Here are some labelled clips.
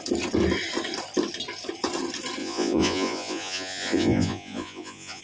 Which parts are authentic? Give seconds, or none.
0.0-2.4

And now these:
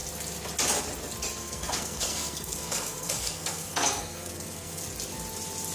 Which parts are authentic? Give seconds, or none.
0.0-1.4; 4.8-5.7

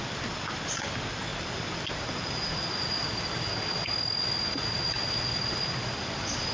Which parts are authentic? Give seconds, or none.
0.0-6.5

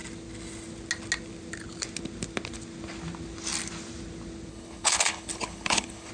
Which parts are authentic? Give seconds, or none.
0.0-4.5